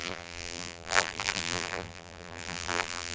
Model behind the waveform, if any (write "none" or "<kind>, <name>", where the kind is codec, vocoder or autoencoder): vocoder, BigVGAN v2